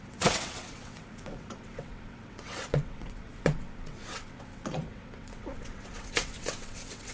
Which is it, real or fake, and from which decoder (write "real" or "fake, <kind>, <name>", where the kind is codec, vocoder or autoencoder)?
fake, vocoder, WaveNeXt